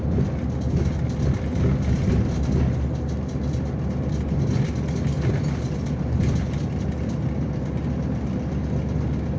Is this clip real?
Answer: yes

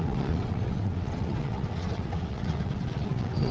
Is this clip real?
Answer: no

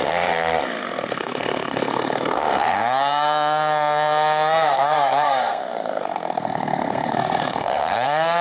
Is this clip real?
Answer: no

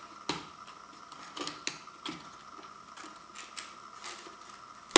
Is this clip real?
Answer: yes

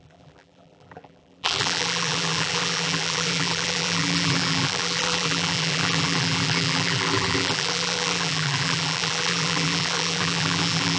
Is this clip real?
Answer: no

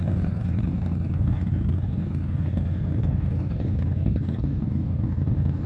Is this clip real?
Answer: no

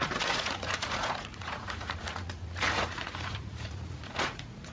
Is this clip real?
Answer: no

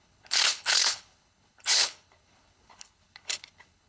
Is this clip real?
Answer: no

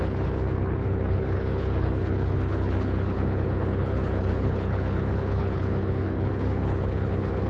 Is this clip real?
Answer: no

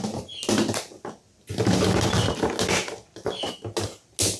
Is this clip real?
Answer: yes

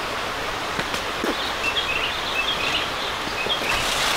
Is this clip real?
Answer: yes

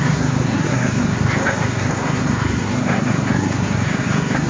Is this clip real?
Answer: no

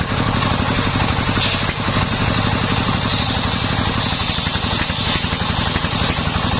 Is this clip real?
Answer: yes